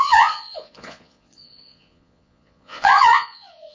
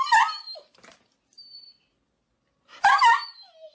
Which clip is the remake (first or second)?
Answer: first